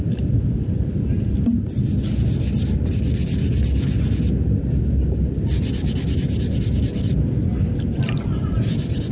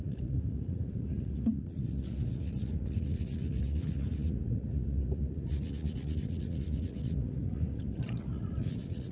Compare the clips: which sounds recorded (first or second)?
first